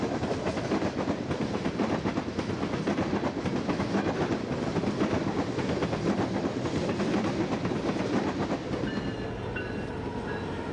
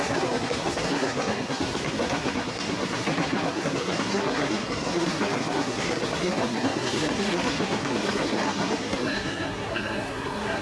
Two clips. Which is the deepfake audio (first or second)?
second